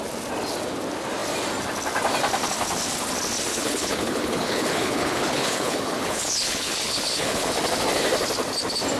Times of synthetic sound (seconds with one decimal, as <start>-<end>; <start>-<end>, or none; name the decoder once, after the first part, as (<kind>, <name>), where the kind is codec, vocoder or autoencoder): 3.5-7.5 (codec, HILCodec)